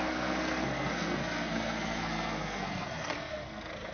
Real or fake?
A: fake